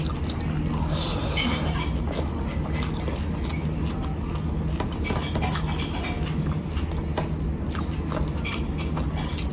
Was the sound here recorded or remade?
recorded